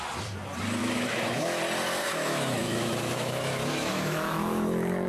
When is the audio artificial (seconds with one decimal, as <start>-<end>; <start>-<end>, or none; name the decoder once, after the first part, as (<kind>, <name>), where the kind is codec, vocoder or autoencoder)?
0.8-1.6 (autoencoder, DAC-VAE); 2.0-5.1